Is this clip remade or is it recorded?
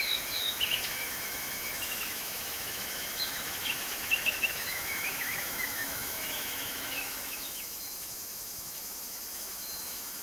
remade